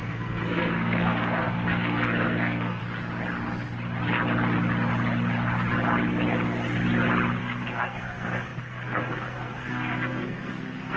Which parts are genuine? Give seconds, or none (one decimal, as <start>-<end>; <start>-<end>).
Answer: 2.8-7.4